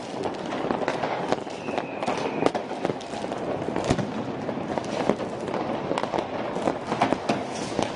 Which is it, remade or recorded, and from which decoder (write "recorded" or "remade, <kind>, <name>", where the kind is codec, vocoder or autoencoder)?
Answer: recorded